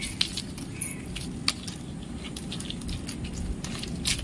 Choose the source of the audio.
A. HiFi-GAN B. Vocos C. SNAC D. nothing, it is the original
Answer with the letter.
D